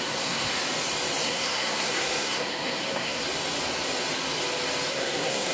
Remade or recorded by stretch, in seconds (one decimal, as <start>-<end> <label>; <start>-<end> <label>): 0.0-0.5 remade; 0.5-1.2 recorded; 1.2-3.2 remade; 3.2-4.9 recorded; 4.9-5.5 remade